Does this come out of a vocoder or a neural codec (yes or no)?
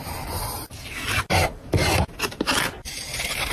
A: no